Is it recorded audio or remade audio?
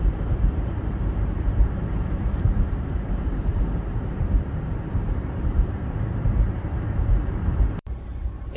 remade